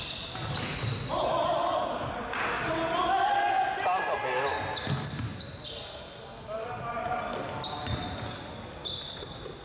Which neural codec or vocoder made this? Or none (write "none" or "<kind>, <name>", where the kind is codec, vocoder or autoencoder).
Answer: none